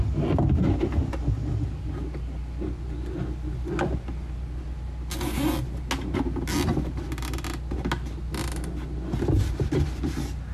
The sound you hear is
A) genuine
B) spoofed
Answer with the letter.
A